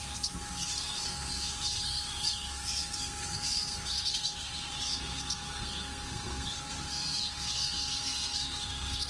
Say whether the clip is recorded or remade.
remade